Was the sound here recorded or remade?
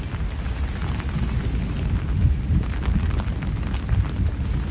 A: recorded